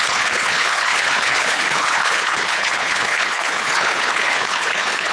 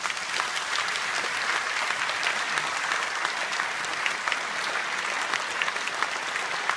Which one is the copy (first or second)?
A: first